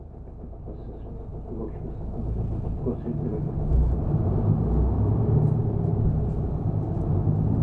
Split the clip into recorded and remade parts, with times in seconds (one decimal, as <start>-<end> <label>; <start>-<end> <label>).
0.0-7.6 recorded